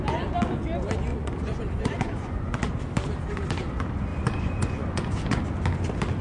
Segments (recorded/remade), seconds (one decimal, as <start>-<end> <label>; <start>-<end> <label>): 0.0-1.1 recorded; 1.1-2.7 remade; 2.7-4.1 recorded; 4.1-5.4 remade; 5.4-6.2 recorded